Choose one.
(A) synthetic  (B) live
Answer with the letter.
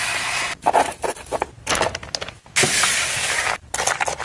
B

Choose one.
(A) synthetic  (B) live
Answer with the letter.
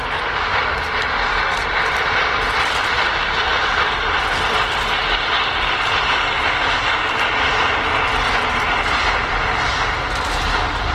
B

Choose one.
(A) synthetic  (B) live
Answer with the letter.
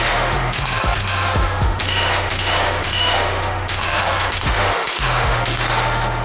A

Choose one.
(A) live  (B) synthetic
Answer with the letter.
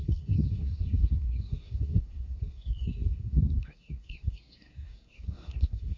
B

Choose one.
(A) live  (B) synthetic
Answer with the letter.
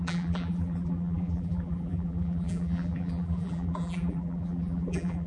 B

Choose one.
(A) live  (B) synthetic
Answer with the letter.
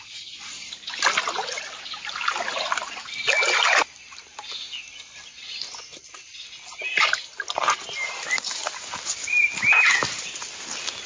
A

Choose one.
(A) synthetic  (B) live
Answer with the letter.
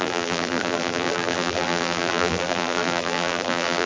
A